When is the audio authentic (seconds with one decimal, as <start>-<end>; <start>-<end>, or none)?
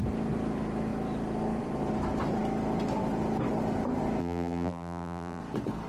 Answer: 0.0-4.2; 5.4-5.9